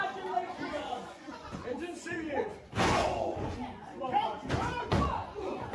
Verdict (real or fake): fake